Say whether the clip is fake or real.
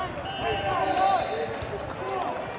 real